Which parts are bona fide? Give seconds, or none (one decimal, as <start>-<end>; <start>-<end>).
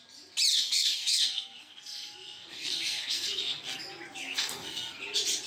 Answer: 0.0-0.5; 3.8-4.2; 5.0-5.5